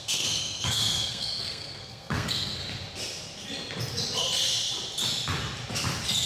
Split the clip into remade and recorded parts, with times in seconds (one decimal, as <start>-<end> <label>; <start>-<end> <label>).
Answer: 0.0-2.6 remade; 2.6-6.3 recorded